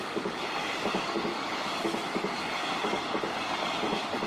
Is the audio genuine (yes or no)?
no